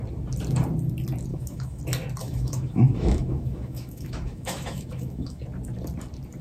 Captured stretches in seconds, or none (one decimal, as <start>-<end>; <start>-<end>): 0.0-1.3; 1.8-2.2; 5.4-6.4